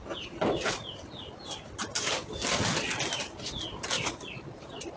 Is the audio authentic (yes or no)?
yes